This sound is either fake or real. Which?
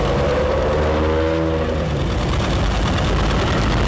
real